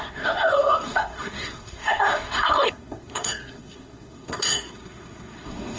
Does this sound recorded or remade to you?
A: remade